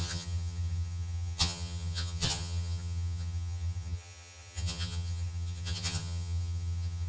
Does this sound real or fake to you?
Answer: fake